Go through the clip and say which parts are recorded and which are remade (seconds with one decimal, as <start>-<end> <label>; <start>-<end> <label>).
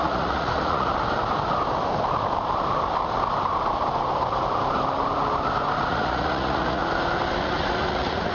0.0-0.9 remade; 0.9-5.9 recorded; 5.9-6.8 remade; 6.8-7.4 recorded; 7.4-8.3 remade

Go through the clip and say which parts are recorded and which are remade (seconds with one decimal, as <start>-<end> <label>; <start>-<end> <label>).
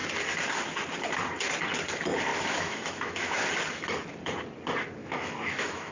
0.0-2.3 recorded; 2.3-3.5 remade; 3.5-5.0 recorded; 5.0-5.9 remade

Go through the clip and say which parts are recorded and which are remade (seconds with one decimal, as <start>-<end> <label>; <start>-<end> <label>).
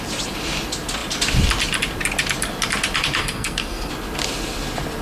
0.0-3.2 recorded; 3.2-3.9 remade; 3.9-5.0 recorded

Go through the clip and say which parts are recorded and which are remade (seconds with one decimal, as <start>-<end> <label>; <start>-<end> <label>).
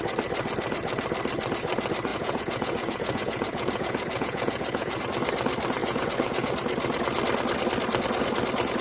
0.0-2.1 recorded; 2.1-5.0 remade; 5.0-5.8 recorded; 5.8-6.5 remade; 6.5-8.8 recorded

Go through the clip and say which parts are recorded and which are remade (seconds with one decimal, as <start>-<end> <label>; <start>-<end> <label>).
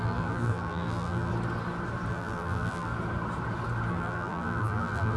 0.0-1.3 remade; 1.3-2.1 recorded; 2.1-2.9 remade; 2.9-3.9 recorded; 3.9-5.2 remade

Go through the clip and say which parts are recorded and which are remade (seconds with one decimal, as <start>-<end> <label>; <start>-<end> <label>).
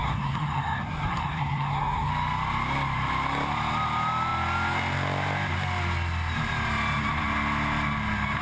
0.0-2.1 remade; 2.1-8.4 recorded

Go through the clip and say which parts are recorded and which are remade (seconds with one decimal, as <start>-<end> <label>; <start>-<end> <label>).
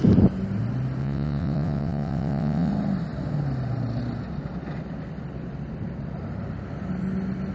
0.0-1.0 recorded; 1.0-2.7 remade; 2.7-7.5 recorded